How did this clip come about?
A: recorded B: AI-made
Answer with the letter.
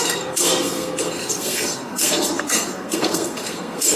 B